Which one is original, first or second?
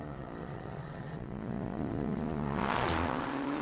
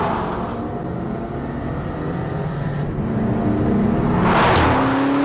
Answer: second